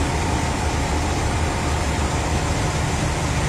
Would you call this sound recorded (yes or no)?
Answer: yes